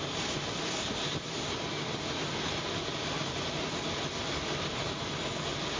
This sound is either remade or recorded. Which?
recorded